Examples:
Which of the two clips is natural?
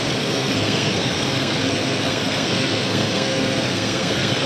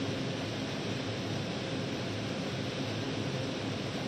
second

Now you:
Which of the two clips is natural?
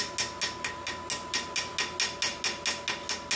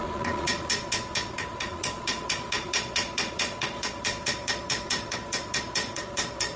first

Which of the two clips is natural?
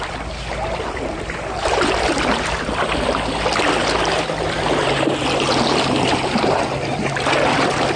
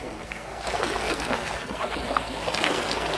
first